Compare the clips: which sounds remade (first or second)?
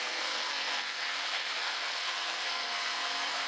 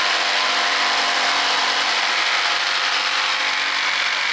first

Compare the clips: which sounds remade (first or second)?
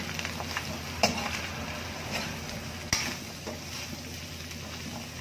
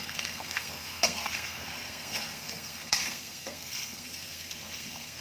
second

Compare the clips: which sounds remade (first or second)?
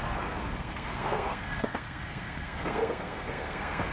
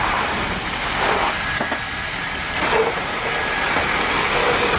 first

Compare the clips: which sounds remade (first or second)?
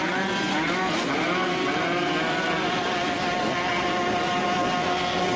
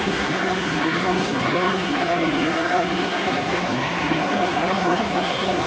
second